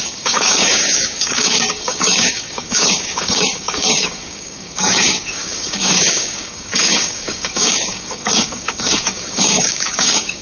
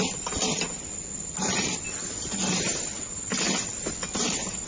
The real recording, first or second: second